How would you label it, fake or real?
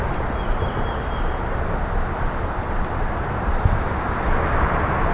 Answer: real